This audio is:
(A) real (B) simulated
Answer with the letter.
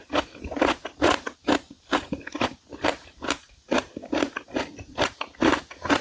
A